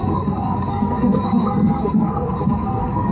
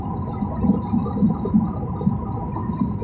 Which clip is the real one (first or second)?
second